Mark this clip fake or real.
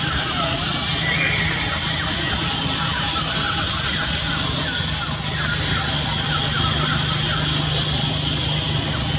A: real